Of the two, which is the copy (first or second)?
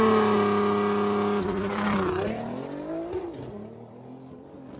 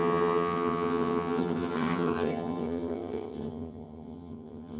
second